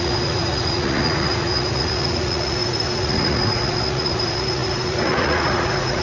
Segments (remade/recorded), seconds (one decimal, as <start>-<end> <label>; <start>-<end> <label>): 0.0-6.0 remade